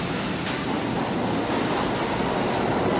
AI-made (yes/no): no